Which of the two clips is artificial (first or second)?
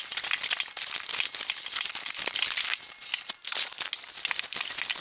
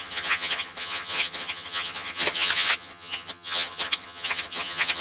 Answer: second